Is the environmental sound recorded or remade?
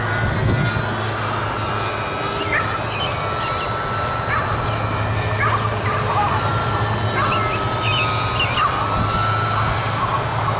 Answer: recorded